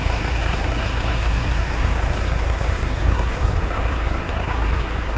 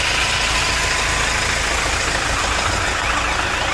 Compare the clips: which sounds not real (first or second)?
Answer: first